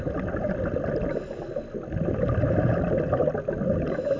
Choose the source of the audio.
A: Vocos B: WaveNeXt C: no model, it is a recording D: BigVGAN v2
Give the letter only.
C